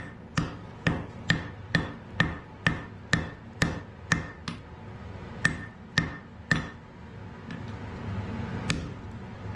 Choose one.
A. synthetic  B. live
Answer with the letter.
B